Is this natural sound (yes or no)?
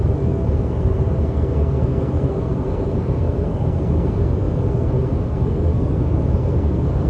no